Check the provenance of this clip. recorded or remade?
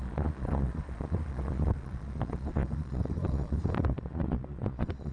remade